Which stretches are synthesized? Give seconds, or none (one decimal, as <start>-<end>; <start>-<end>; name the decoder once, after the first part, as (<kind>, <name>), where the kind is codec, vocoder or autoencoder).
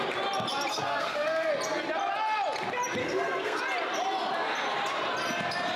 0.7-1.5 (codec, SNAC); 3.0-3.6